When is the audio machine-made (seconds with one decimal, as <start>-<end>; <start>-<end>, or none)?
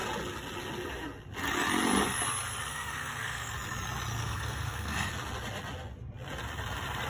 2.7-3.5; 4.2-5.1